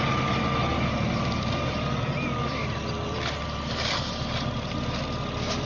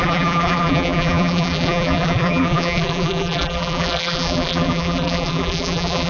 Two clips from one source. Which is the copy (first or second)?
second